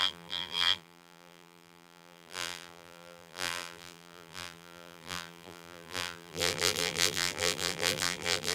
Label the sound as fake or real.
fake